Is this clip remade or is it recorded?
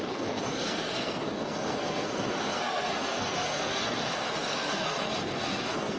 remade